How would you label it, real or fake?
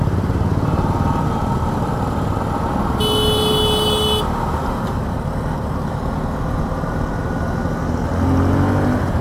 real